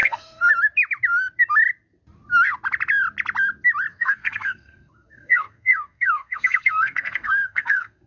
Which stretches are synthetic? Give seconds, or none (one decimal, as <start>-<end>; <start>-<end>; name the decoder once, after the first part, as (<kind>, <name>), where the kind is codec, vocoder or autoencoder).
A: 0.0-0.5 (codec, SNAC); 3.9-8.1